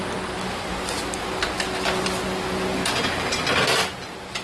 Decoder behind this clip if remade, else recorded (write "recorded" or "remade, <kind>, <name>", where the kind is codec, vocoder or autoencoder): recorded